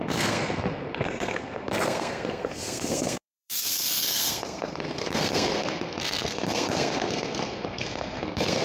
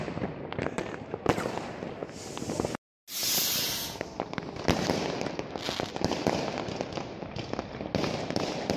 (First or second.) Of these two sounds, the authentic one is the second